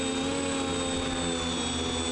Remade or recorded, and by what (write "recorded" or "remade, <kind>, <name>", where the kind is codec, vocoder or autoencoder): recorded